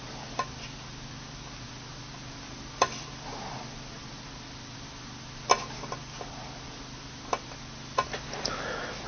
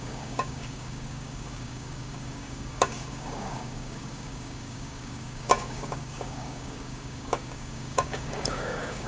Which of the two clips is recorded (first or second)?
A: first